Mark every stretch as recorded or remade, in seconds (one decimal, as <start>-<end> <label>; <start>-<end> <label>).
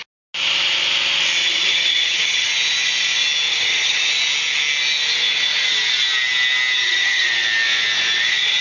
0.0-1.4 recorded; 1.4-2.5 remade; 2.5-3.5 recorded; 3.5-4.1 remade; 4.1-6.8 recorded; 6.8-7.3 remade; 7.3-8.6 recorded